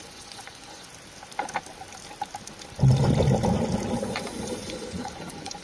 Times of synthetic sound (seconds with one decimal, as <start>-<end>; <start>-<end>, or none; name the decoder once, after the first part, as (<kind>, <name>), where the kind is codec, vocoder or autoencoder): 0.0-0.9 (vocoder, Vocos); 4.1-5.6